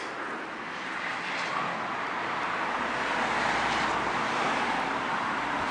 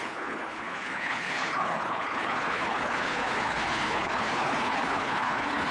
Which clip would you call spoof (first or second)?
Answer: second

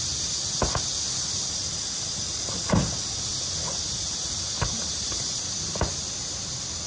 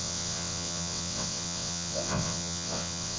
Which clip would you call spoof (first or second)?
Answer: second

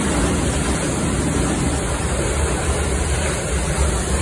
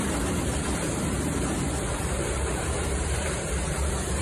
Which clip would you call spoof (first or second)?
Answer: second